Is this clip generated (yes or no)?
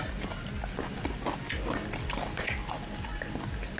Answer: no